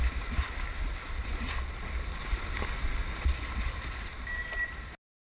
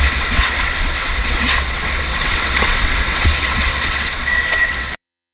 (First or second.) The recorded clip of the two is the first